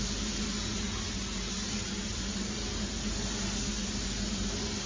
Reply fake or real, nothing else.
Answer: real